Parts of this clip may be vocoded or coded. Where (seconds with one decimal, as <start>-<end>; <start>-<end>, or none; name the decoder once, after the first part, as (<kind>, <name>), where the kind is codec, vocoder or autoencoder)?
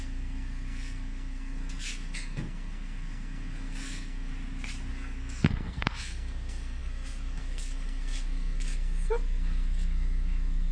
0.0-4.3 (codec, SNAC); 4.9-10.7